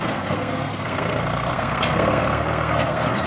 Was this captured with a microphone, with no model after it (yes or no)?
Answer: no